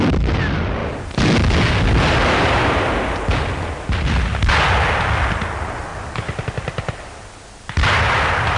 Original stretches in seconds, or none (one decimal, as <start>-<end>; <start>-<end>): 0.0-5.9; 7.2-8.6